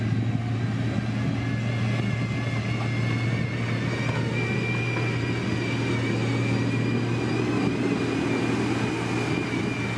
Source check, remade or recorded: recorded